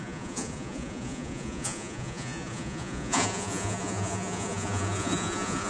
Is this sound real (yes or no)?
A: no